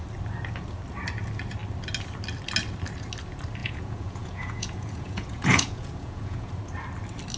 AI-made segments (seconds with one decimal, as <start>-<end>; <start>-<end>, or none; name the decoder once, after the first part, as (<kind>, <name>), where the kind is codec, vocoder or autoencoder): 3.6-6.5 (vocoder, Vocos)